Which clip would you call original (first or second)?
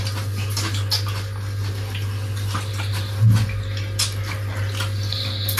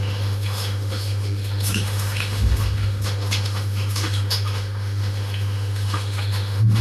first